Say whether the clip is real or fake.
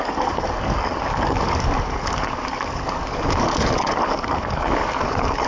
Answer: fake